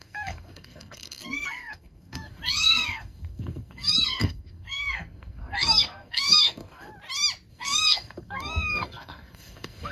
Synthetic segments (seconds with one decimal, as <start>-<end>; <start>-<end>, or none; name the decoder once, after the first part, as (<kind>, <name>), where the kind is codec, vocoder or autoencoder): 0.0-6.9 (codec, SNAC); 7.5-9.9